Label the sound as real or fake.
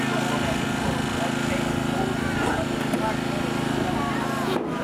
real